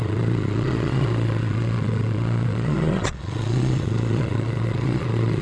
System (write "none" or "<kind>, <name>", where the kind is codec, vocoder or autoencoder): vocoder, Vocos